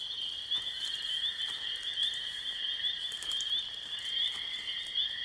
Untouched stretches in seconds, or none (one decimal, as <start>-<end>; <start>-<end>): 0.0-2.0